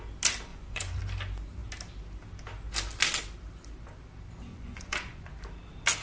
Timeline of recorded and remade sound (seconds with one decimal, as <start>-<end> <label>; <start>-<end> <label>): 0.0-0.5 recorded; 0.5-1.0 remade; 1.0-4.5 recorded; 4.5-5.3 remade; 5.3-6.0 recorded